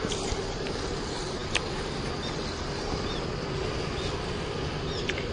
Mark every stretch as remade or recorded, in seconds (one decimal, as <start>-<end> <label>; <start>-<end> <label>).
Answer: 0.0-5.3 recorded